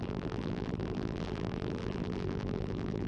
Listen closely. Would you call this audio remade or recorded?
remade